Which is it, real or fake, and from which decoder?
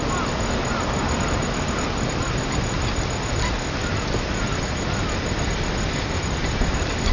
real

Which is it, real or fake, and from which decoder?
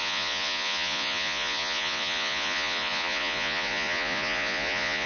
fake, vocoder, Vocos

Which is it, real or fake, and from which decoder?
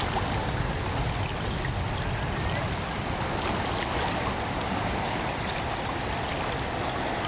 real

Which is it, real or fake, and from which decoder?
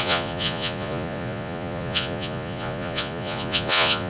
fake, vocoder, Vocos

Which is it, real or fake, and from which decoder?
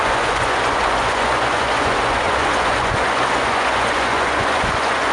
fake, vocoder, Vocos